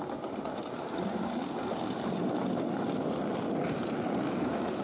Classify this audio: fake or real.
real